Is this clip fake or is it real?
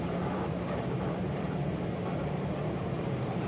fake